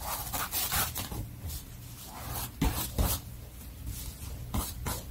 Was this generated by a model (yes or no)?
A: no